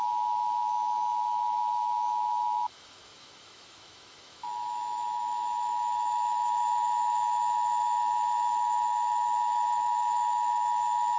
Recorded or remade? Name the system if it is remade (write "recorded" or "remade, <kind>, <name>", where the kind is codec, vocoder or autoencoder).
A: remade, autoencoder, DAC-VAE